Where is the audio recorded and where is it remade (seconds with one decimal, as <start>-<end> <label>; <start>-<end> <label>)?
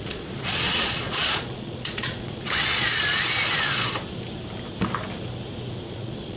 0.0-2.9 remade; 2.9-5.8 recorded; 5.8-6.4 remade